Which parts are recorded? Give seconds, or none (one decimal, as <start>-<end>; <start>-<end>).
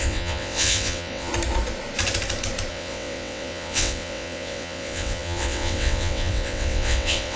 1.3-2.7